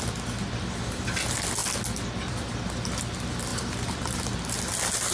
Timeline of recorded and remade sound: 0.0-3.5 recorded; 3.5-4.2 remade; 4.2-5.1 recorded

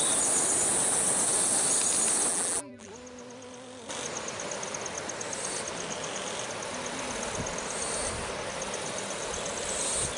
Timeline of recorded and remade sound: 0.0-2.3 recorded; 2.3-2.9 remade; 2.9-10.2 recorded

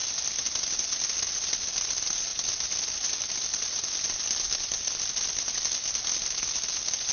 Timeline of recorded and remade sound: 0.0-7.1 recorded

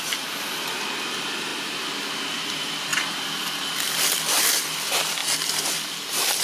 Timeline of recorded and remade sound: 0.0-1.5 remade; 1.5-2.3 recorded; 2.3-5.2 remade; 5.2-5.9 recorded; 5.9-6.4 remade